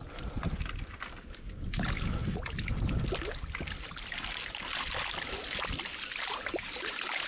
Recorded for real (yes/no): yes